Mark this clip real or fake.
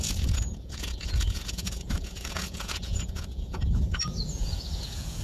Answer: fake